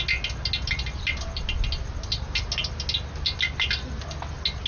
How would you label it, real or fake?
real